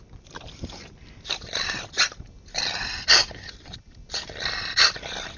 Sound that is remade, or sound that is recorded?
recorded